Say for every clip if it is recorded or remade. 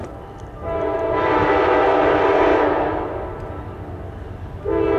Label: recorded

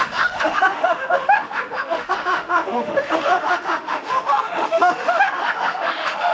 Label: remade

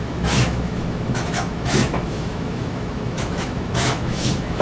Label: remade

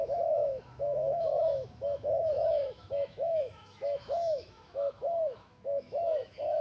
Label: remade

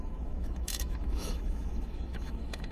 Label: remade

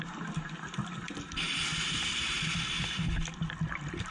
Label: recorded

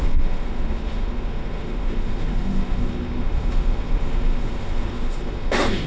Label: remade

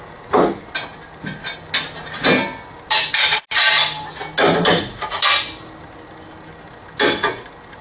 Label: recorded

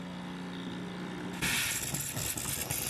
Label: recorded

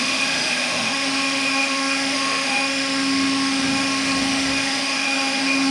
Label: remade